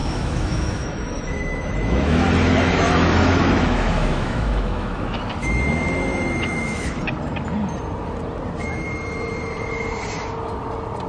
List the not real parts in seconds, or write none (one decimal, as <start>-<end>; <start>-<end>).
0.0-5.2; 6.1-7.0